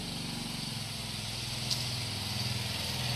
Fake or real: real